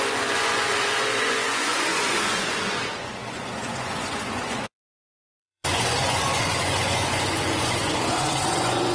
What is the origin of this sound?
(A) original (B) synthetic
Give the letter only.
B